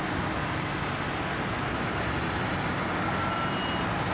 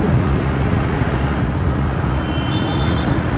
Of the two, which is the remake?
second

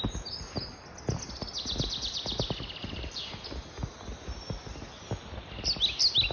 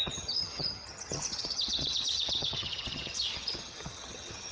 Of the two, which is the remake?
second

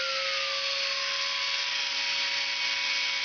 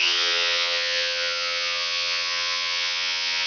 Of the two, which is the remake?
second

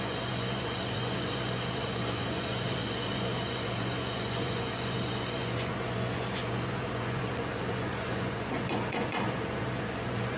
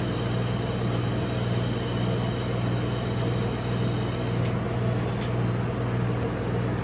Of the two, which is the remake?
first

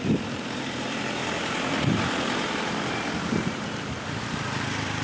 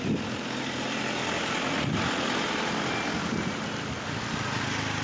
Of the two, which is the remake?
first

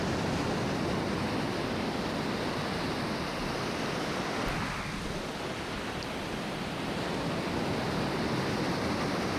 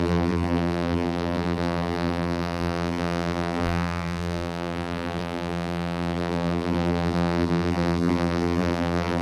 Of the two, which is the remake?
second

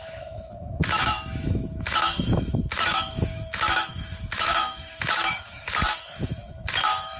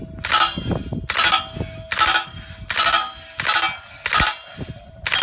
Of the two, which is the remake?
first